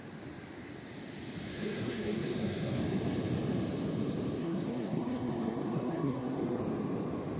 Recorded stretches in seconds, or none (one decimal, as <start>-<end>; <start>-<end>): 0.0-1.5; 2.8-4.4; 6.6-7.4